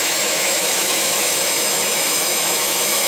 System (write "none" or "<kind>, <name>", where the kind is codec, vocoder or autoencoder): autoencoder, DAC-VAE